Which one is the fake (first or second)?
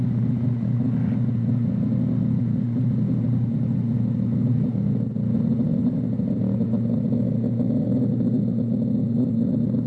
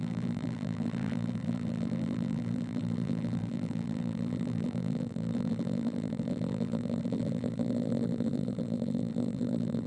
second